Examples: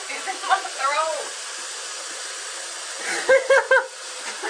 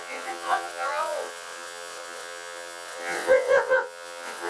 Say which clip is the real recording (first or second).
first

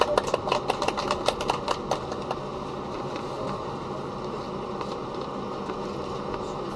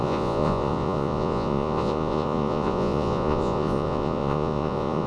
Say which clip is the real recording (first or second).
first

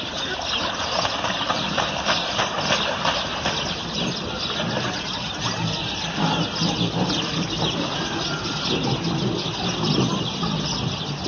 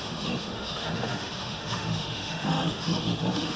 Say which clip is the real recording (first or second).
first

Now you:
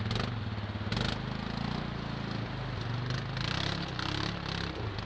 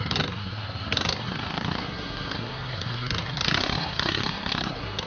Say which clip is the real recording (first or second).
first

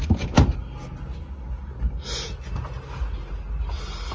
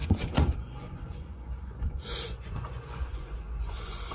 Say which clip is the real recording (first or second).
first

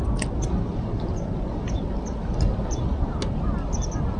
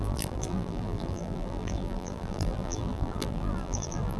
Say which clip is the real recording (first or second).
first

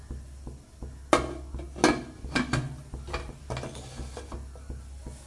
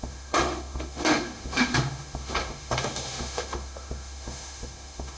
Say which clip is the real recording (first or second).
first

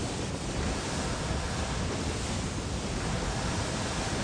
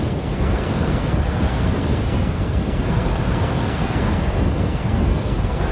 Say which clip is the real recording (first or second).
first